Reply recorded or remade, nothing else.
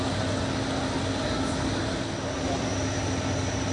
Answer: recorded